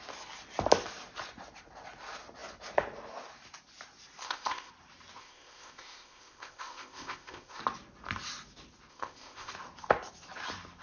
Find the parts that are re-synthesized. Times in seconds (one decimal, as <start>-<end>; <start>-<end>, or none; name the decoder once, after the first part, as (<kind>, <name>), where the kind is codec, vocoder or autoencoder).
4.2-4.7 (codec, ZipCodec); 5.2-7.6; 8.9-9.5